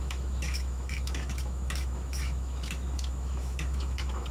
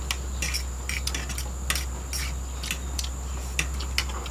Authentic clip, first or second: second